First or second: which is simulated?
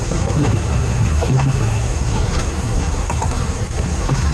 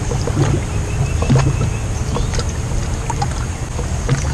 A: first